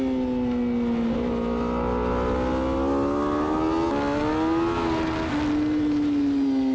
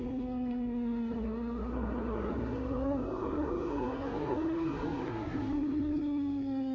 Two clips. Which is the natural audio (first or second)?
first